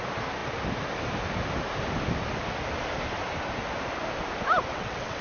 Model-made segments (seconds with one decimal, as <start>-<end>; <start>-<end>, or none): 4.7-5.2